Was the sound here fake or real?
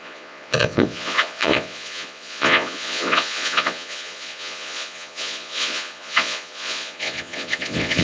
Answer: fake